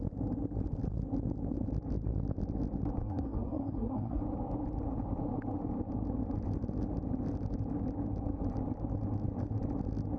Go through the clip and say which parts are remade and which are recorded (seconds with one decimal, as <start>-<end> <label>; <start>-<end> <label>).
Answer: 0.0-3.0 recorded; 3.0-4.2 remade; 4.2-10.2 recorded